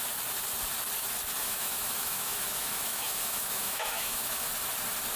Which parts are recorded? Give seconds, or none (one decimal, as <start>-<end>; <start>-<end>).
0.0-1.4; 4.5-5.2